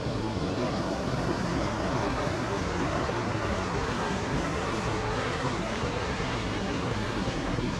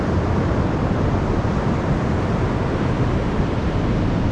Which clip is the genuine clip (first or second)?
second